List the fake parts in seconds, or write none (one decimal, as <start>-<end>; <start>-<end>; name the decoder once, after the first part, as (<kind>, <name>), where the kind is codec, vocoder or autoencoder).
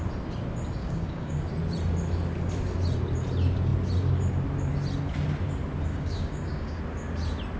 0.8-1.5 (codec, DAC); 5.9-6.8